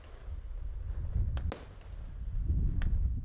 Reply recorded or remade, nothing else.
recorded